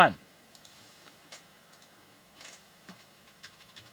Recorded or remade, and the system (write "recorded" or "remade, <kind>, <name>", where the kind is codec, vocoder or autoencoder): remade, autoencoder, DAC-VAE